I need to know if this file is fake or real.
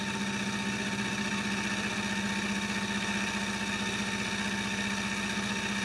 real